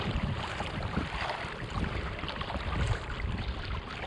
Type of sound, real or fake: real